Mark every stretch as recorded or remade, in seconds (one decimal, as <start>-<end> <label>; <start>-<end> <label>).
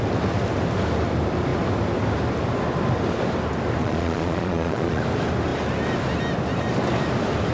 0.0-3.8 recorded; 3.8-5.0 remade; 5.0-7.5 recorded